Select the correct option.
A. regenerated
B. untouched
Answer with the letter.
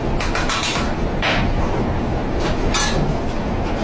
B